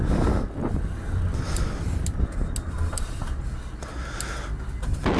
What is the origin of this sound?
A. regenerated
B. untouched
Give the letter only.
B